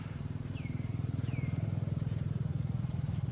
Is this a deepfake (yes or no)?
yes